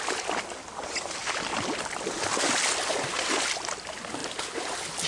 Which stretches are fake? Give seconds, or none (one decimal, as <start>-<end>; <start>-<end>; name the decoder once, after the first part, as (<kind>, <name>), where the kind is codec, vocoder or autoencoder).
none